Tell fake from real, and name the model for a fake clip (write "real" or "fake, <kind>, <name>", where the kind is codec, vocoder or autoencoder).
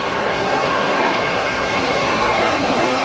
fake, codec, SNAC